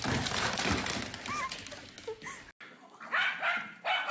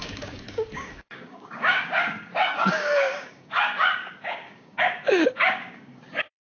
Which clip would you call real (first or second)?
first